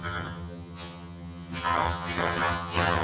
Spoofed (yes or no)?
yes